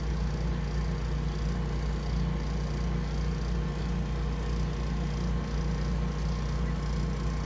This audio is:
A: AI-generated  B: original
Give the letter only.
B